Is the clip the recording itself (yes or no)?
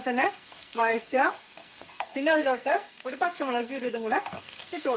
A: no